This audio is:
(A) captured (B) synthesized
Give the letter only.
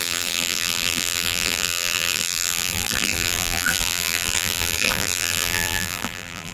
B